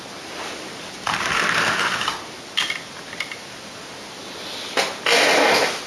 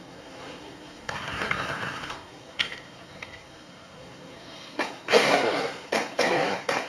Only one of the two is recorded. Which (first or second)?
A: first